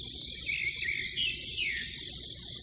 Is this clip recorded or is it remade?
recorded